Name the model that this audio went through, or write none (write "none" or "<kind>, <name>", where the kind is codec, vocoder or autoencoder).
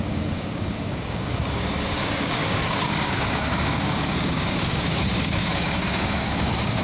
codec, DAC